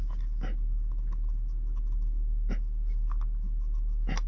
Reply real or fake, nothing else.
real